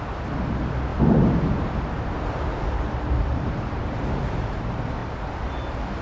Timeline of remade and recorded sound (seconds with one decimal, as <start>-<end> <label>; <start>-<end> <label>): 0.0-6.0 recorded